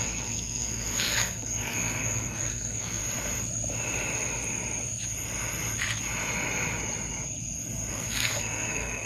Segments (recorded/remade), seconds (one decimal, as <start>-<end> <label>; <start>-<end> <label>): 0.0-3.0 remade; 3.0-7.9 recorded; 7.9-9.1 remade